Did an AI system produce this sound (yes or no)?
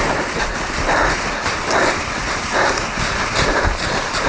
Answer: no